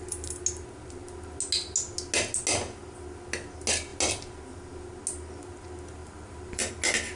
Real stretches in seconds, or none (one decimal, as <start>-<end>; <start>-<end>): 0.0-6.0; 6.7-7.2